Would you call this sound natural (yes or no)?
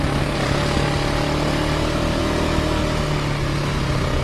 yes